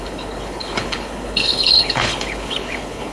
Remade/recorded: remade